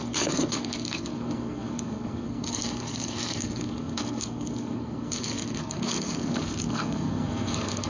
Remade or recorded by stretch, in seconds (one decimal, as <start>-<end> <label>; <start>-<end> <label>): 0.0-7.9 remade